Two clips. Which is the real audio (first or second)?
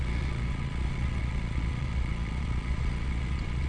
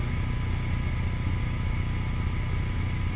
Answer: second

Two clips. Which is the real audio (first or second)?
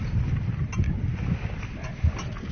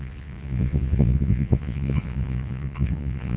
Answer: first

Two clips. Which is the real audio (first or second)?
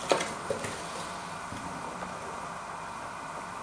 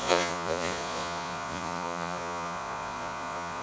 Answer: first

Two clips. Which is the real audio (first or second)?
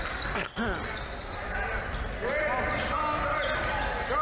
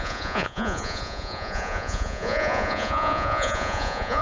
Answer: first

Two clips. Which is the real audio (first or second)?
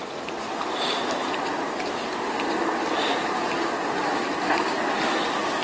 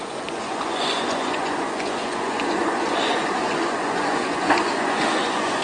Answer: first